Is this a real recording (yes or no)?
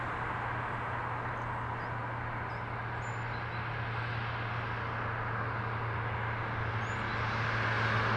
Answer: yes